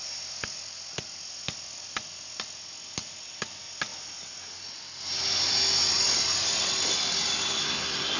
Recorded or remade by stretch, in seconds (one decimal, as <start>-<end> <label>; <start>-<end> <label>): 0.0-7.6 recorded; 7.6-8.2 remade